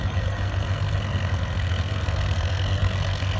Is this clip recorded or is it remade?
remade